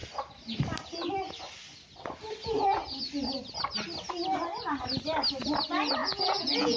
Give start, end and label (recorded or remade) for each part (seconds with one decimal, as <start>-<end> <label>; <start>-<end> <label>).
0.0-6.0 recorded; 6.0-6.8 remade